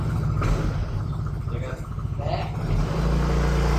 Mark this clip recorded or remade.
recorded